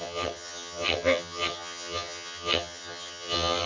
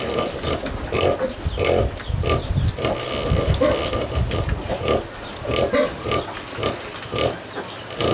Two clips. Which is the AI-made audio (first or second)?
first